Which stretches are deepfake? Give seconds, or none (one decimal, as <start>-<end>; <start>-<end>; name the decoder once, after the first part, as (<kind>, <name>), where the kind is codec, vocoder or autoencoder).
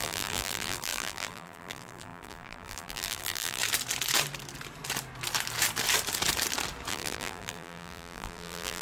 0.0-3.6 (vocoder, BigVGAN v2); 6.9-8.8